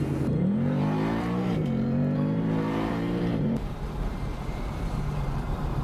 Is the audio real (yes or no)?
no